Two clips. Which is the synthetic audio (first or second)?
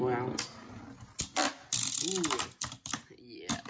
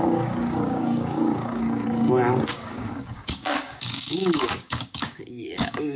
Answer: second